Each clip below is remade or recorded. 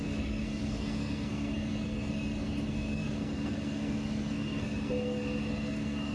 remade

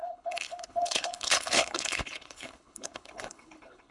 remade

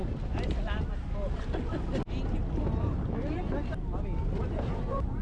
recorded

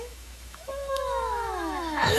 remade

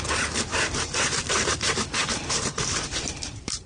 remade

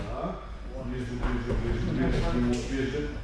recorded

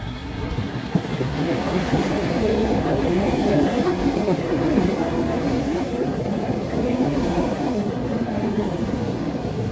remade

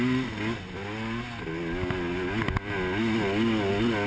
recorded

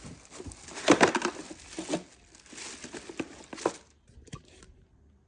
recorded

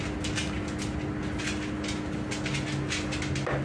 recorded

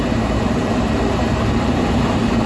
remade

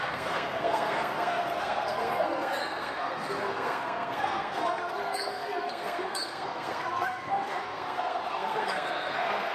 remade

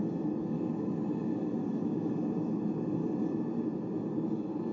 recorded